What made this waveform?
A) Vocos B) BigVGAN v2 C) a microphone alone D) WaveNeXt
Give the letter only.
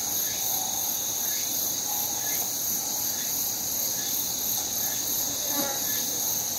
C